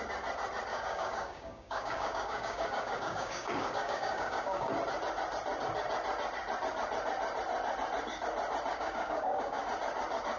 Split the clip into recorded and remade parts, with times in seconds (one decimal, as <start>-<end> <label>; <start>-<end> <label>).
0.0-0.7 recorded; 0.7-4.7 remade; 4.7-8.7 recorded; 8.7-9.6 remade; 9.6-10.4 recorded